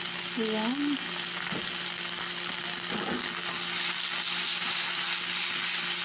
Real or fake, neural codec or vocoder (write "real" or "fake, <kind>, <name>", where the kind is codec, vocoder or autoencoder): real